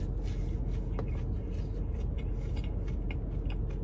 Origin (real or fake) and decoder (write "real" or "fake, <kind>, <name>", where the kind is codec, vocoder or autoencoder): real